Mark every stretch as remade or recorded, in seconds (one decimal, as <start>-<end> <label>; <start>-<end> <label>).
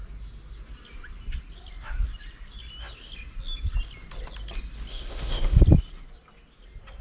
0.0-4.9 recorded; 4.9-5.6 remade; 5.6-7.0 recorded